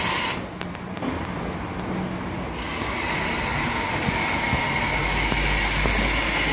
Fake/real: real